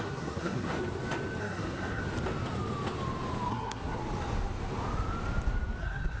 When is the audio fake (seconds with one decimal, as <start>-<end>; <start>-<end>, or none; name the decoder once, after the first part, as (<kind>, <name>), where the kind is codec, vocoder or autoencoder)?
0.0-0.7 (codec, SNAC); 1.4-2.0; 3.5-4.0; 5.8-6.2